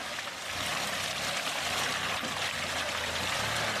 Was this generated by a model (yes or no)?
no